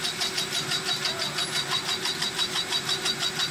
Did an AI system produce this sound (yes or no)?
no